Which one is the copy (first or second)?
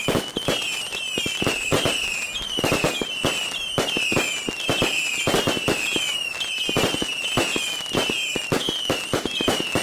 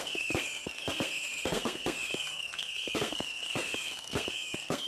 second